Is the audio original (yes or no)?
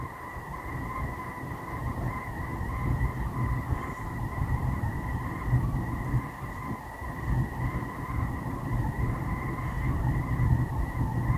yes